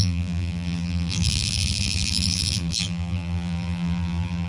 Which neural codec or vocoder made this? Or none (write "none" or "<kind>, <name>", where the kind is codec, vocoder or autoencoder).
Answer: vocoder, BigVGAN v2